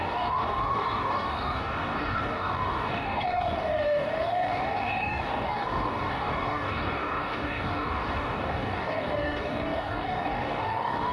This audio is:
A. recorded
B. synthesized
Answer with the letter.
B